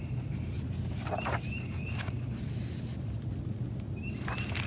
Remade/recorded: recorded